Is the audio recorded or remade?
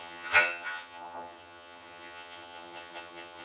remade